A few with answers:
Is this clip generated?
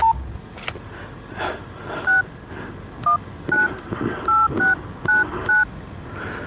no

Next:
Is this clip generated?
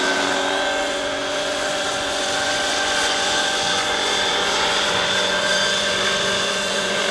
yes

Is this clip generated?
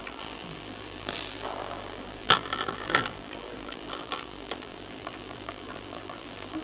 yes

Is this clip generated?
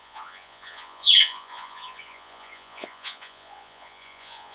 yes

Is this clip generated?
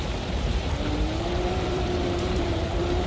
yes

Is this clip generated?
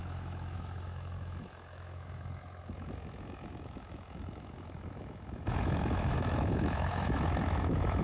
yes